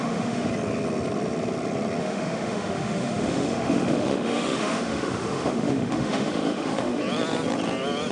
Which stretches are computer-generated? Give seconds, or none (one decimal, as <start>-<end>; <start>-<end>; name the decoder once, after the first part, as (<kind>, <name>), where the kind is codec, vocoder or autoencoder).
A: 0.0-0.5 (autoencoder, DAC-VAE); 2.0-7.0